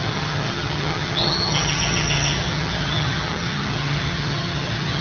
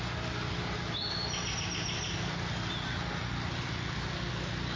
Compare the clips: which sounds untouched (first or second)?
second